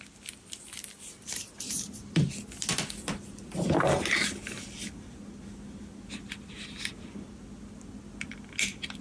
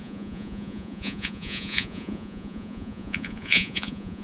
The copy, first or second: second